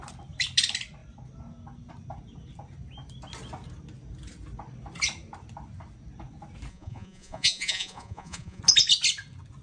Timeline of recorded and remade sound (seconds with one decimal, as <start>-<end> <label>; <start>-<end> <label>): 0.0-6.7 recorded; 6.7-8.6 remade; 8.6-9.6 recorded